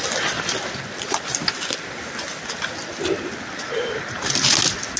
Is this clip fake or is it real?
real